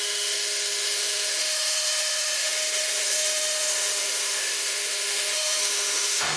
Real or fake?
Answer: fake